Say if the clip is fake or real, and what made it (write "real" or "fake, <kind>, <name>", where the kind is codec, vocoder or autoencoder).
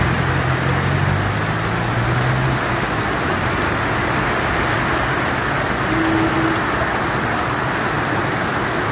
real